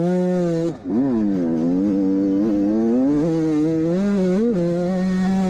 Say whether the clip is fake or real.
real